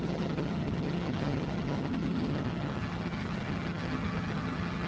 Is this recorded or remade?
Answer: remade